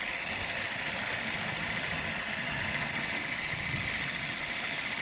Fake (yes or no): no